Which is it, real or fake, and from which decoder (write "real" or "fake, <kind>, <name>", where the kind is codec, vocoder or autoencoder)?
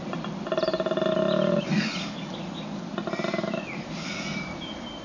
real